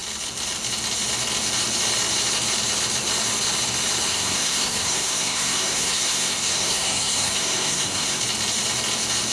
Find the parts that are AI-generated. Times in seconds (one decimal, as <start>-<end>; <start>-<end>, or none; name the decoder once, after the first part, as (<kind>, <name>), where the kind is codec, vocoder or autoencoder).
4.1-8.2 (codec, SNAC)